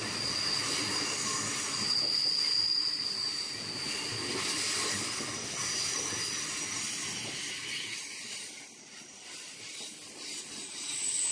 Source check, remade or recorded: recorded